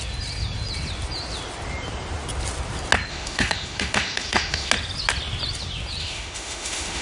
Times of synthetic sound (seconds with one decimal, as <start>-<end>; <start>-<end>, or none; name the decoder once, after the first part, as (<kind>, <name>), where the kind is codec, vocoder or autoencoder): 3.1-4.7 (autoencoder, DAC-VAE); 6.0-7.0